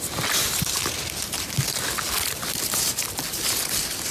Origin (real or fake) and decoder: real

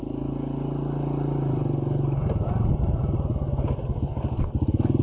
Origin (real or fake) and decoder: real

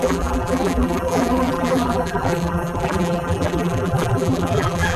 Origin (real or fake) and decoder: fake, vocoder, BigVGAN v2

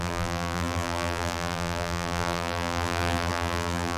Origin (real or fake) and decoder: fake, vocoder, BigVGAN v2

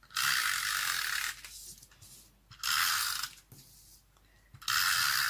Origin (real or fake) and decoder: real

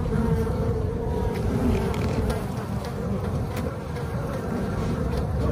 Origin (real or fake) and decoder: fake, vocoder, BigVGAN v2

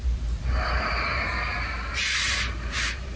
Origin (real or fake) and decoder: fake, vocoder, BigVGAN v2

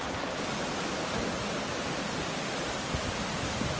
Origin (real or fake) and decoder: real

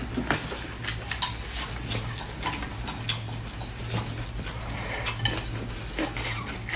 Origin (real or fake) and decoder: real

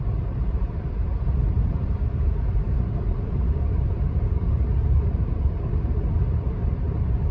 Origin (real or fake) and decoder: fake, vocoder, BigVGAN v2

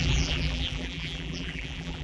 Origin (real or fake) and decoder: fake, vocoder, BigVGAN v2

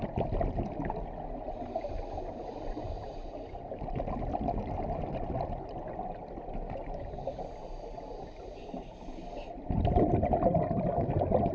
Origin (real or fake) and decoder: real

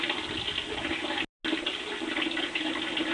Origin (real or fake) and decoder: real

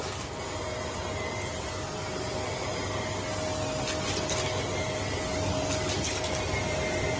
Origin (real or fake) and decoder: real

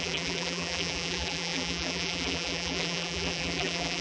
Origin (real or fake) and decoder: fake, vocoder, BigVGAN v2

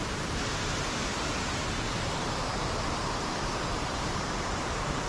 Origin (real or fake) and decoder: fake, vocoder, BigVGAN v2